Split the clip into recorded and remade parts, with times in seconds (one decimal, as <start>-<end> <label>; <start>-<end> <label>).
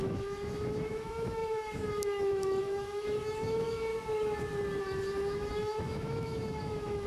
0.0-3.9 remade; 3.9-4.8 recorded; 4.8-7.1 remade